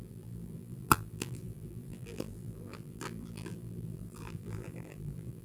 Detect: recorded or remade remade